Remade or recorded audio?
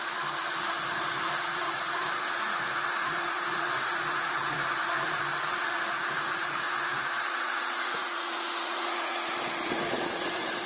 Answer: remade